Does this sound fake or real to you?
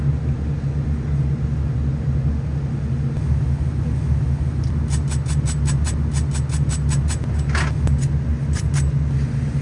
real